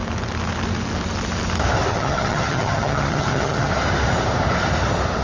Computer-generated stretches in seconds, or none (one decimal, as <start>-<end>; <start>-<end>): 1.9-3.7